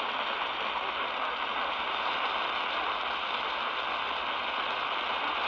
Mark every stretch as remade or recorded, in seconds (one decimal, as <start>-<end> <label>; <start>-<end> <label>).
0.0-1.5 recorded; 1.5-2.3 remade; 2.3-5.5 recorded